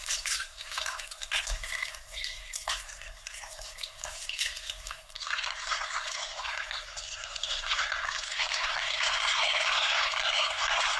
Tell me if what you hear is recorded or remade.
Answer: remade